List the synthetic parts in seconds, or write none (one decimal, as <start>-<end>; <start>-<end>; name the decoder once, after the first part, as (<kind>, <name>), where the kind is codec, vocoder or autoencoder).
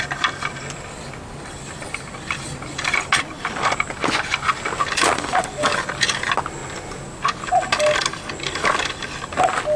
none